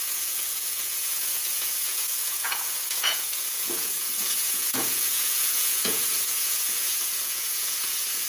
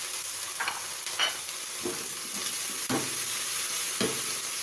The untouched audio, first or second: second